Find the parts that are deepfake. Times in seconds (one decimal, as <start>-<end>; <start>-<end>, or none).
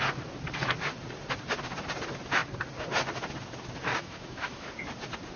3.9-4.7